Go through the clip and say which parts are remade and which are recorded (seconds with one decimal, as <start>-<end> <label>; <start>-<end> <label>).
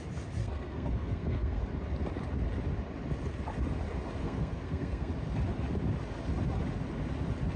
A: 0.0-0.4 recorded; 0.4-1.6 remade; 1.6-4.2 recorded; 4.2-5.1 remade; 5.1-7.6 recorded